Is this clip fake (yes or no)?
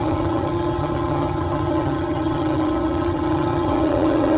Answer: yes